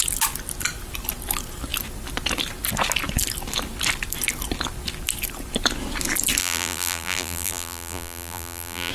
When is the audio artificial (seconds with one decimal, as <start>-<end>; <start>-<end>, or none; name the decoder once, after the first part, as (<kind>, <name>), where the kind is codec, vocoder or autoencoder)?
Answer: 6.4-8.9 (vocoder, BigVGAN v2)

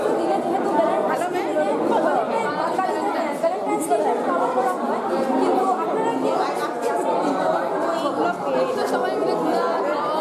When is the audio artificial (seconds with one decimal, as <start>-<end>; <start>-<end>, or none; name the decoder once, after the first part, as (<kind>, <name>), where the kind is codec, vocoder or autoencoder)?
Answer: 2.1-3.2 (vocoder, BigVGAN v2); 6.6-8.0

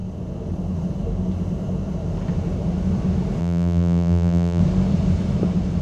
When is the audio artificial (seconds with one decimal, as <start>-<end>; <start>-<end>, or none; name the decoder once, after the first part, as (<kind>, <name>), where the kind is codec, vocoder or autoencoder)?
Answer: 3.4-4.6 (vocoder, BigVGAN v2)

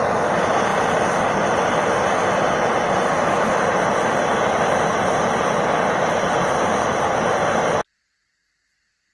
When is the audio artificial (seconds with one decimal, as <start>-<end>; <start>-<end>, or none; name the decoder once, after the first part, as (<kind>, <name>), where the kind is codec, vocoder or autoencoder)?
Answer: none

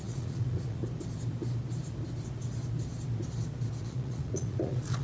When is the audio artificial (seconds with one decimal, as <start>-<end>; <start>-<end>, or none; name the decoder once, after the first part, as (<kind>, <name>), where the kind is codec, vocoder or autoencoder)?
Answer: 0.0-0.8 (vocoder, Vocos); 3.8-5.0

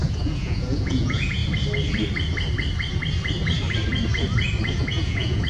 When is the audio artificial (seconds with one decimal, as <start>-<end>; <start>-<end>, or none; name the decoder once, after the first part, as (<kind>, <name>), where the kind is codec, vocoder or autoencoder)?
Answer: 0.0-1.4 (vocoder, Vocos); 4.7-5.5